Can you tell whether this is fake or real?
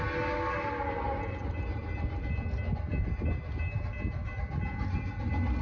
real